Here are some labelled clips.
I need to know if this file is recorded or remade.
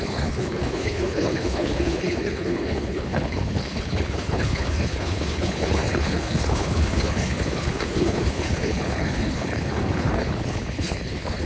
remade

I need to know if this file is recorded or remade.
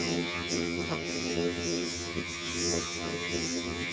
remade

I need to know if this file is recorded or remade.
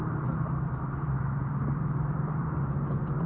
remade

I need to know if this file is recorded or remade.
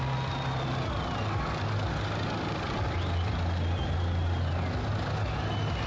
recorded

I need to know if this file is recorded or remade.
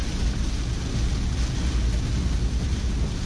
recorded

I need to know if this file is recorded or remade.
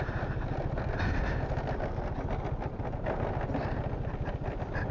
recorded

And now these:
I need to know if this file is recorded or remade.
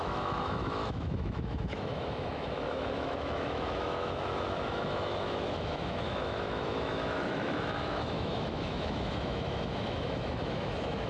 remade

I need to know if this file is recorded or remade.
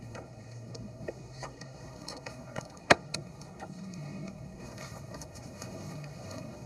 remade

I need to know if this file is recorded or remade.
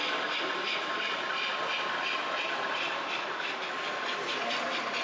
recorded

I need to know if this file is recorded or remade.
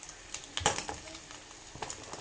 recorded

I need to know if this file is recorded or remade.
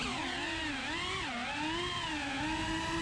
recorded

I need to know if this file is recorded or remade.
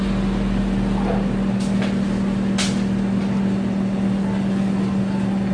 recorded